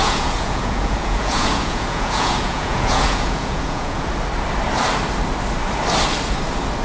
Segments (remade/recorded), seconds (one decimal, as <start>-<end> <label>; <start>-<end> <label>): 0.0-4.1 remade; 4.1-6.8 recorded